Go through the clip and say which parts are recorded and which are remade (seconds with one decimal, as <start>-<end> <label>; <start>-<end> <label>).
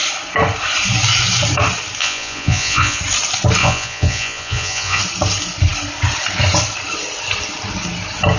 0.0-2.0 recorded; 2.0-3.0 remade; 3.0-3.6 recorded; 3.6-5.0 remade; 5.0-8.4 recorded